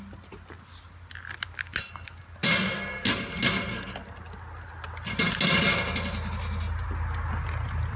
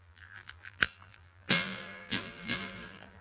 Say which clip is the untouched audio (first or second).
first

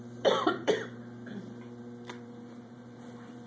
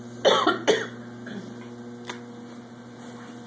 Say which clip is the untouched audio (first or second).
second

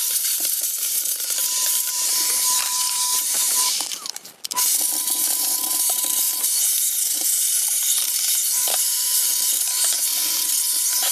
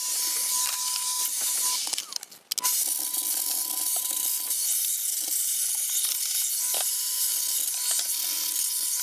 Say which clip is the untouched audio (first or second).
second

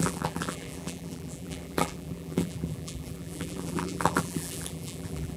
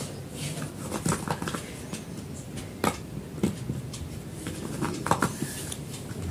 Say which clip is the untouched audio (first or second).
second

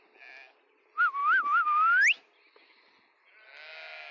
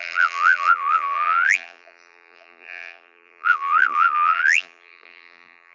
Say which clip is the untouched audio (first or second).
first